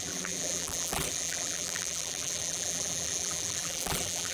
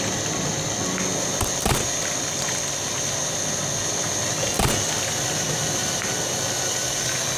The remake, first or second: first